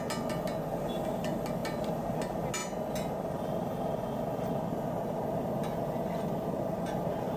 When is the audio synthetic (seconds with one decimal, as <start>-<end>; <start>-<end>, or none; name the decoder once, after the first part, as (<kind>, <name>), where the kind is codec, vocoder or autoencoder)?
none